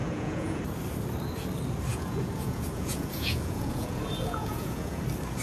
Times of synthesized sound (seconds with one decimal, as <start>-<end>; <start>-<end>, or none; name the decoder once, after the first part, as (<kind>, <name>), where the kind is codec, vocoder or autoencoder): 0.0-0.6 (vocoder, Vocos); 1.9-5.0

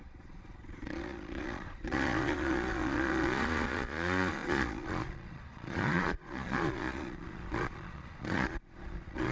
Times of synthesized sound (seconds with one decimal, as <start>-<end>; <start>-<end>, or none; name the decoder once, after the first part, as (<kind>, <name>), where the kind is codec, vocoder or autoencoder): 0.0-9.3 (vocoder, Vocos)

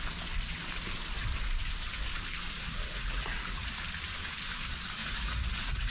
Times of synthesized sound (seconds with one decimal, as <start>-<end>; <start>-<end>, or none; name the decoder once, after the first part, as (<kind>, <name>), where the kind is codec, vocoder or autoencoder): 2.7-3.7 (vocoder, Vocos); 5.0-5.9

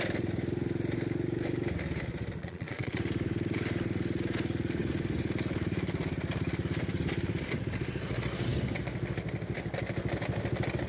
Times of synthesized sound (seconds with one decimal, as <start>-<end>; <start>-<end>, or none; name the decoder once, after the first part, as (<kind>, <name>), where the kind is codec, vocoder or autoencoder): 2.4-3.0 (vocoder, Vocos)